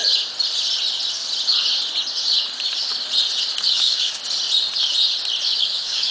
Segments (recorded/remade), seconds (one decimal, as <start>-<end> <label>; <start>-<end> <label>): 0.0-3.7 recorded; 3.7-4.2 remade; 4.2-5.6 recorded; 5.6-6.1 remade